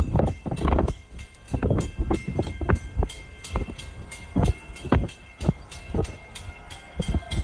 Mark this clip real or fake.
fake